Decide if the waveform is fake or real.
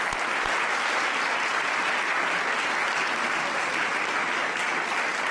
real